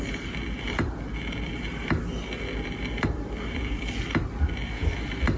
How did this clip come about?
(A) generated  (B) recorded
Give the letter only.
B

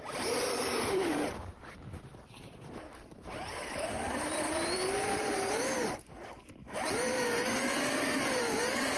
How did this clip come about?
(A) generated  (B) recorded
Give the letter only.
A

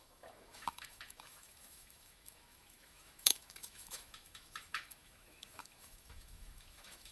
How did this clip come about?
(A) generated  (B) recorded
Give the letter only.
A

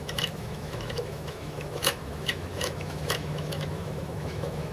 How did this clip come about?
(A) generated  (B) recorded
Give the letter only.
A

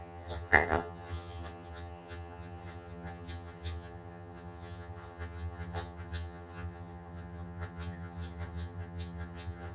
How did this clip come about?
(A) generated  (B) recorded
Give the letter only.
A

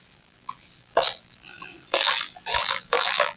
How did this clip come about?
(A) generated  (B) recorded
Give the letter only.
A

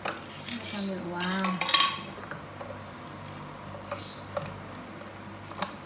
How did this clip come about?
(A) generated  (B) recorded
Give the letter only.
B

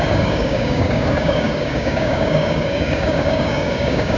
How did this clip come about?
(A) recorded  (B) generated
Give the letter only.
B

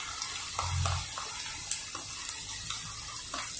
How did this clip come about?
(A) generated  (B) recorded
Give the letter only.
B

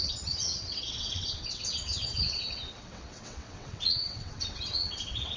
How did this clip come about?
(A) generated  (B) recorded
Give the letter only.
A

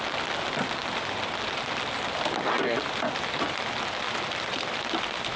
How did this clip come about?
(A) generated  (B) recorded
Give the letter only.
B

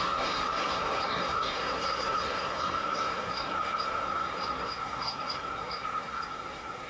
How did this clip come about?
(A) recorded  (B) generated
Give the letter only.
B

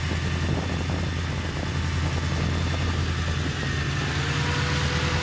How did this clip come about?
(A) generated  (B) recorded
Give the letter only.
B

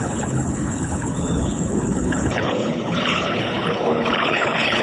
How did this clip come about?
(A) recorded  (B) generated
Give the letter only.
B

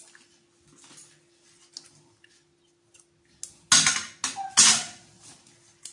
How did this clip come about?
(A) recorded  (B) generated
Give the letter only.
A